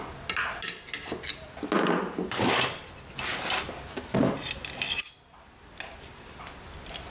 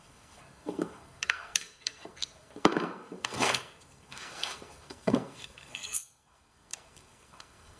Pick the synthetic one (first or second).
second